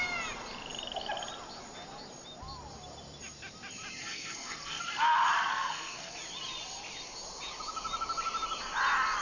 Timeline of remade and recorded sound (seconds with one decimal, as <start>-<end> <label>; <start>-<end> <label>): 0.0-4.0 recorded; 4.0-4.8 remade; 4.8-5.5 recorded; 5.5-6.1 remade; 6.1-9.2 recorded

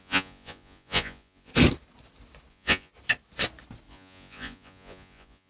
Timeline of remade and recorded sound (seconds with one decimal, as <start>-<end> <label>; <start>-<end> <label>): 0.0-1.5 remade; 1.5-2.5 recorded; 2.5-2.9 remade; 2.9-3.9 recorded; 3.9-5.5 remade

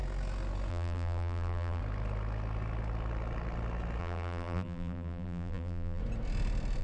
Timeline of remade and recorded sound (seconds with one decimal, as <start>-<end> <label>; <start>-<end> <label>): 0.0-0.7 recorded; 0.7-1.8 remade; 1.8-4.0 recorded; 4.0-6.0 remade; 6.0-6.8 recorded

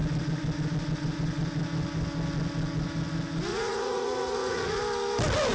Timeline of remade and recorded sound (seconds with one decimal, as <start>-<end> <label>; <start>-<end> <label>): 0.0-3.5 recorded; 3.5-4.8 remade; 4.8-5.5 recorded